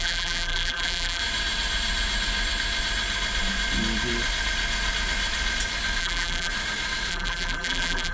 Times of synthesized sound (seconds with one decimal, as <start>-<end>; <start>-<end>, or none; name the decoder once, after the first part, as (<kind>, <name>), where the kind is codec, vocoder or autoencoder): 0.0-1.2 (vocoder, BigVGAN v2); 6.0-6.5; 7.1-8.1